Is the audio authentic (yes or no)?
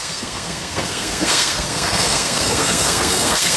no